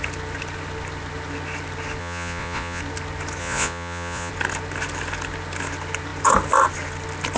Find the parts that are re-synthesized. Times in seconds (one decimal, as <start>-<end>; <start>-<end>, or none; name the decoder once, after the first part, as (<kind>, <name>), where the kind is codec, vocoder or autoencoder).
2.0-2.8 (vocoder, Vocos); 3.4-4.3

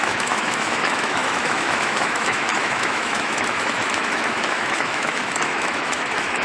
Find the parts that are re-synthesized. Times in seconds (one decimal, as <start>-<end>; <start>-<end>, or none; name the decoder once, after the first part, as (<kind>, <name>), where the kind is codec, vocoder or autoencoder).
0.0-6.4 (autoencoder, DAC-VAE)

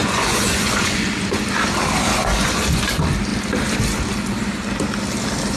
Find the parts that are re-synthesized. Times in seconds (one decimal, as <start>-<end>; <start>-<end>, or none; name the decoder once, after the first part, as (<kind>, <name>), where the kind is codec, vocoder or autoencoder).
0.0-1.4 (vocoder, Vocos); 2.1-2.9

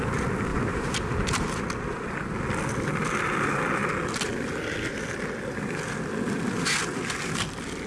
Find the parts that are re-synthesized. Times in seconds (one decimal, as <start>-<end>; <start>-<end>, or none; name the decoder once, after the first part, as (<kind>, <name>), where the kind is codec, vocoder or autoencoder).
0.5-1.6 (vocoder, BigVGAN v2)